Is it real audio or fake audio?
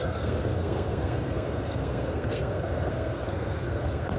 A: fake